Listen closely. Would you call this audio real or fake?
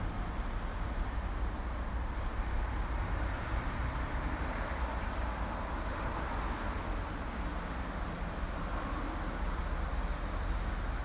real